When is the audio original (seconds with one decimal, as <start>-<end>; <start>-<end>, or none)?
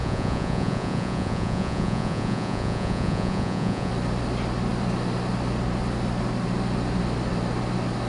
3.9-8.1